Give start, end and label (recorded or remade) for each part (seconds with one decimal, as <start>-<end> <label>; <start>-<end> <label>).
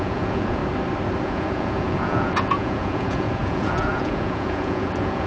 0.0-0.6 remade; 0.6-1.2 recorded; 1.2-5.3 remade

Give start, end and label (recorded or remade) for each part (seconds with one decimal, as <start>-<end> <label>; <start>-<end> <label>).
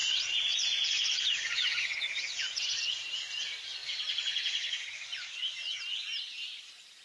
0.0-2.8 remade; 2.8-3.8 recorded; 3.8-5.8 remade; 5.8-7.0 recorded